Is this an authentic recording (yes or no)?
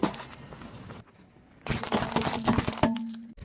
yes